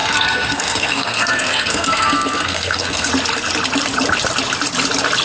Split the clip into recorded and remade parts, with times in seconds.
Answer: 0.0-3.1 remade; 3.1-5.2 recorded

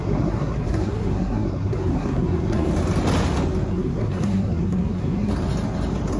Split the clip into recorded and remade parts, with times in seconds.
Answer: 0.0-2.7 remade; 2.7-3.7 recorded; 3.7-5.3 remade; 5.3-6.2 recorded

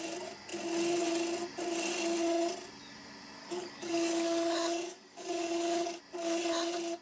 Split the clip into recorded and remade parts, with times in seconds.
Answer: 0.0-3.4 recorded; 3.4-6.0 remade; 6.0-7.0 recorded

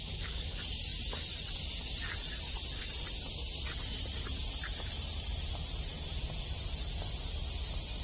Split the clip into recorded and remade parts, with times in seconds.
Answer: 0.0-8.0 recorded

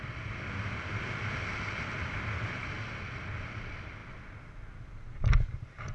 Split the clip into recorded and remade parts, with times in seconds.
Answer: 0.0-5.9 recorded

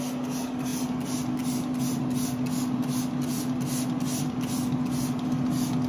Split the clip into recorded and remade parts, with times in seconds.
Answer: 0.0-5.9 recorded

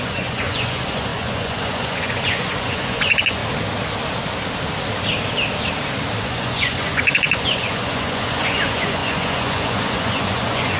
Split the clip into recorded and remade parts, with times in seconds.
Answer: 0.0-3.4 remade; 3.4-6.2 recorded; 6.2-10.8 remade